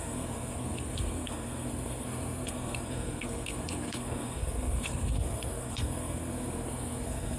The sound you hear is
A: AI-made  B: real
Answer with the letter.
A